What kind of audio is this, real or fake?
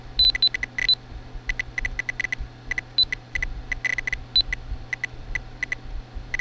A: real